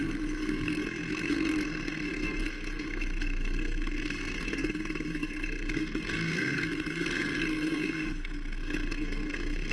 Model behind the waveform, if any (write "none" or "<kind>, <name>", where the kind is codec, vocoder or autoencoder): codec, SNAC